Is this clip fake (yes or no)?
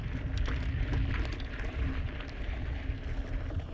no